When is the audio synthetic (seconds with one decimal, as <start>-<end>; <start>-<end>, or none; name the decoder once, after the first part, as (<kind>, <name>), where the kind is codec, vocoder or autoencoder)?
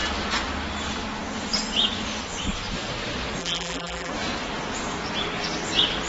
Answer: 3.4-4.1 (vocoder, BigVGAN v2)